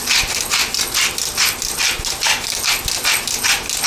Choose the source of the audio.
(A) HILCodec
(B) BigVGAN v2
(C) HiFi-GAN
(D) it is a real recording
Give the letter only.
D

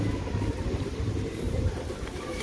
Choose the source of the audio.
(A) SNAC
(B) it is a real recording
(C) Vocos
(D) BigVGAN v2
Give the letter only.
D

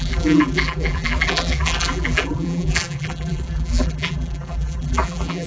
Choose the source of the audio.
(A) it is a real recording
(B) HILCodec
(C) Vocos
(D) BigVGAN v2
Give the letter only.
D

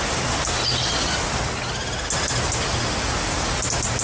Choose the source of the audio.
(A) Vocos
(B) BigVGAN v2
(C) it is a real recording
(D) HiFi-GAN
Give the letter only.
C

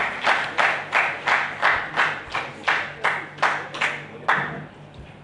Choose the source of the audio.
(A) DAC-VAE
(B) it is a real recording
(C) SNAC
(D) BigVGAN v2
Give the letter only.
B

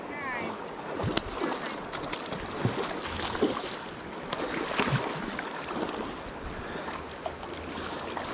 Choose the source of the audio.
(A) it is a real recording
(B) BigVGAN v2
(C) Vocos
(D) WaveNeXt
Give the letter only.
A